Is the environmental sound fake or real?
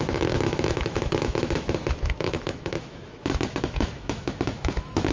fake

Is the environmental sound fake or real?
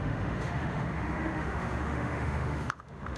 fake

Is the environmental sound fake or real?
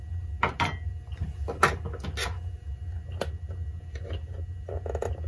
real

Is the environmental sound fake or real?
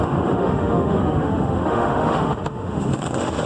fake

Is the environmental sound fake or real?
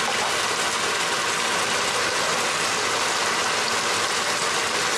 real